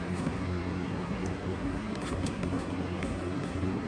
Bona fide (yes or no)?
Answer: no